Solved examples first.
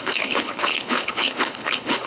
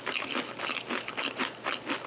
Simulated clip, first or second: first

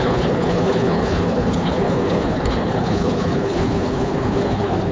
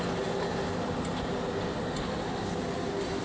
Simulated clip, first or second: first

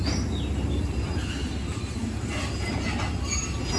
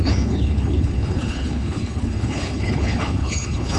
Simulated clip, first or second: second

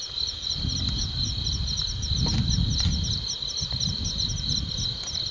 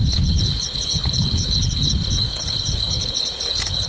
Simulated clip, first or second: second